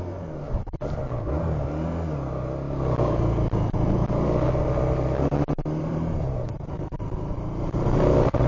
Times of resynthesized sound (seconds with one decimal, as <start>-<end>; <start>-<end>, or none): 0.0-1.0; 5.8-8.5